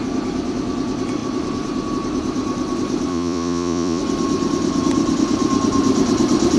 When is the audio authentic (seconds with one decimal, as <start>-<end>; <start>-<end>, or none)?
0.0-3.1; 4.0-6.6